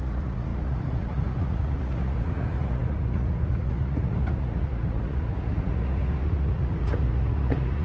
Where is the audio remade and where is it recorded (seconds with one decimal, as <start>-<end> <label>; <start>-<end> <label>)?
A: 0.0-7.8 remade